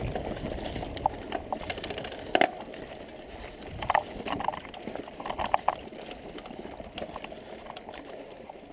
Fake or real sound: real